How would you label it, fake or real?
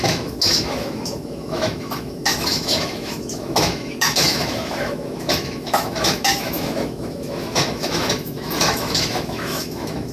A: fake